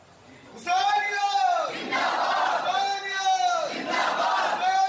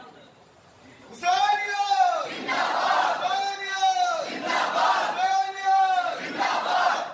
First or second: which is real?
first